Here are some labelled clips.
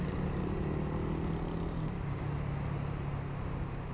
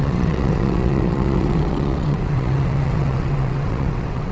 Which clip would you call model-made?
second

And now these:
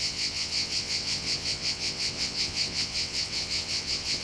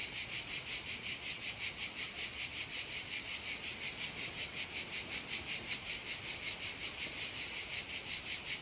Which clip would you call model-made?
first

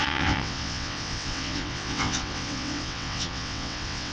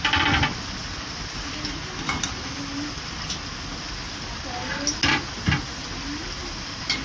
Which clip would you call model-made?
first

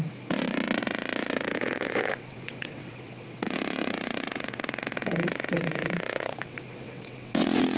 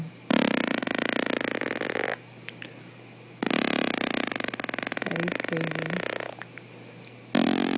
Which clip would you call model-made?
first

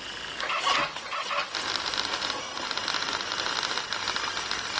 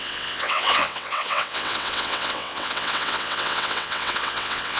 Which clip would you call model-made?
second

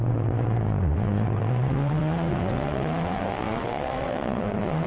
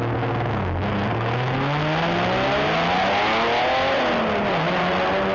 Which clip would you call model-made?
first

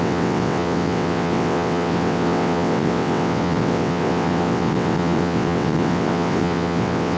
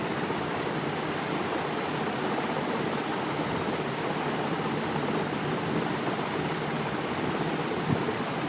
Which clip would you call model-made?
first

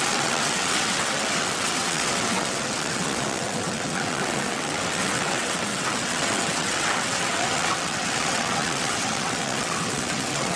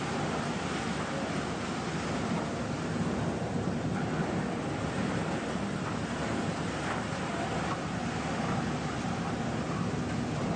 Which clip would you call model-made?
first